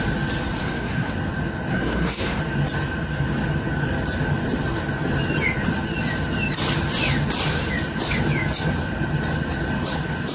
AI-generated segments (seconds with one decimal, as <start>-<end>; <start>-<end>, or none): 0.6-1.1; 1.7-2.4